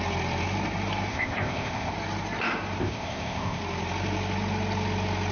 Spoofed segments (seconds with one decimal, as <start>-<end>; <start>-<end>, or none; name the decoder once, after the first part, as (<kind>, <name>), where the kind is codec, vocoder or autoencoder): 1.1-1.9 (codec, ZipCodec); 2.8-3.6